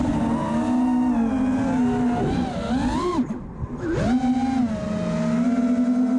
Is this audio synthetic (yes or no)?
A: no